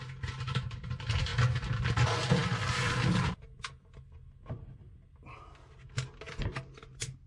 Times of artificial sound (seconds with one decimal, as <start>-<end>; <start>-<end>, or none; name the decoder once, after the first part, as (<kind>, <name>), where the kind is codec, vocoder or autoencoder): none